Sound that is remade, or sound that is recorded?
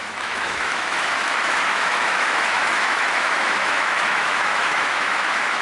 remade